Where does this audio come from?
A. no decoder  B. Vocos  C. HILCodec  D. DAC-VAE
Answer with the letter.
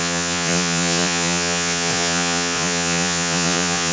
B